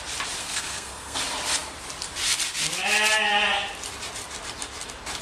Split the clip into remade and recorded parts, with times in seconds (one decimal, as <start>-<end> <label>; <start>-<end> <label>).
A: 0.0-0.4 recorded; 0.4-1.2 remade; 1.2-5.2 recorded